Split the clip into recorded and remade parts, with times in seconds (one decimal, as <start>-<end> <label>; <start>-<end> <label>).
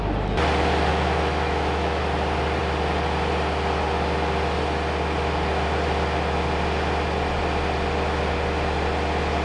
0.0-0.9 recorded; 0.9-2.0 remade; 2.0-9.4 recorded